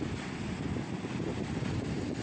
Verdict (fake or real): real